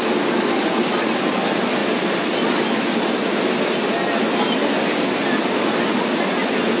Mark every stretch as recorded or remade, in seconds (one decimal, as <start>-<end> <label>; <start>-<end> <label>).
0.0-6.8 recorded